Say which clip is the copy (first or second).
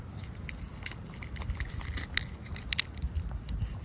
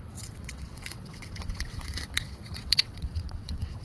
second